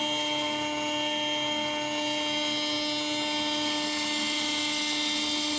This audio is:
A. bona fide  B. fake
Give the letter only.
A